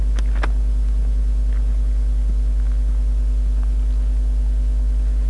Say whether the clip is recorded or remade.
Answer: recorded